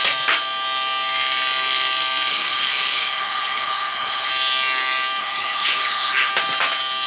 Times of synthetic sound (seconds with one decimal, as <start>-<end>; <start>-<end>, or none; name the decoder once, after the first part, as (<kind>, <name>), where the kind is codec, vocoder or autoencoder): 2.3-4.3 (codec, HILCodec); 5.2-6.3